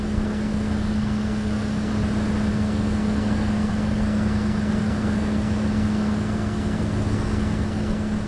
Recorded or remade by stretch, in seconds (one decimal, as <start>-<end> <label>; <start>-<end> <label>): 0.0-1.9 remade; 1.9-2.5 recorded; 2.5-8.3 remade